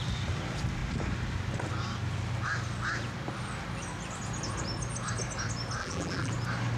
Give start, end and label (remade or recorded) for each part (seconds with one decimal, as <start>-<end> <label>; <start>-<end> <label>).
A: 0.0-5.8 recorded; 5.8-6.3 remade; 6.3-6.8 recorded